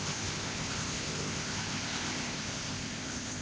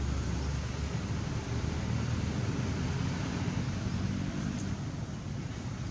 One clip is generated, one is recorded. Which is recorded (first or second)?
second